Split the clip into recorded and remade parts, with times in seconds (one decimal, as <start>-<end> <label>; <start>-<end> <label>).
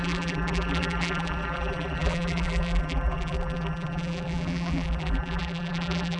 0.0-6.2 remade